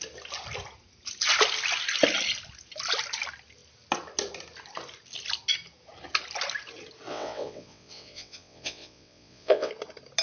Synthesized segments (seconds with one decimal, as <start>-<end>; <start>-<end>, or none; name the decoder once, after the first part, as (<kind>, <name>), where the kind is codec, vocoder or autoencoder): 7.1-9.7 (vocoder, WaveNeXt)